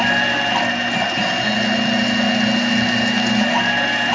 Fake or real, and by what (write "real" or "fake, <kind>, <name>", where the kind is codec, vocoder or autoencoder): real